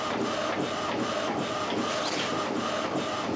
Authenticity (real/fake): real